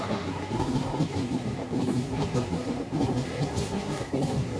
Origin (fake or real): fake